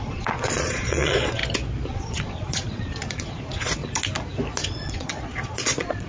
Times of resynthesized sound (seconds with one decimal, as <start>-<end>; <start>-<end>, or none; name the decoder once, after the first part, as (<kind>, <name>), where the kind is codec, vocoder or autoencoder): 0.0-1.4 (vocoder, Vocos); 1.9-3.8; 4.7-6.1